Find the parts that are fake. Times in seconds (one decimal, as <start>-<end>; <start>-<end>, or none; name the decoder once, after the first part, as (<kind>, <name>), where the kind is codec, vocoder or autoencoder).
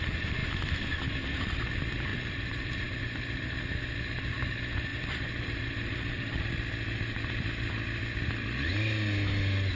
2.1-3.0 (vocoder, BigVGAN v2); 4.9-6.4